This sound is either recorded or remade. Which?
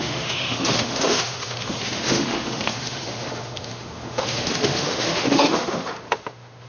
remade